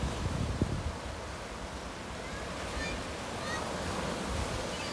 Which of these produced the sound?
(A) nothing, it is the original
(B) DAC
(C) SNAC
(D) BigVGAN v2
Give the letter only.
A